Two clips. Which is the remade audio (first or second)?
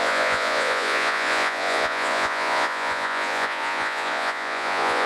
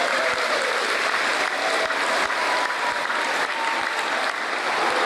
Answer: first